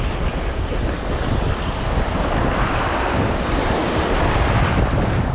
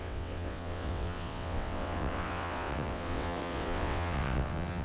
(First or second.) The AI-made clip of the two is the second